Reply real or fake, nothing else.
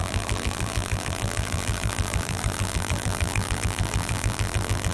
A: fake